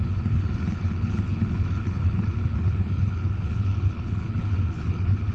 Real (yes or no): no